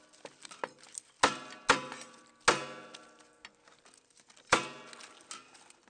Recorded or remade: recorded